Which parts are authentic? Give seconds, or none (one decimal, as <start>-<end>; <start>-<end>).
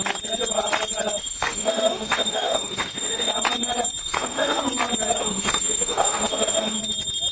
0.0-1.2; 3.3-4.0; 4.6-5.2; 6.8-7.3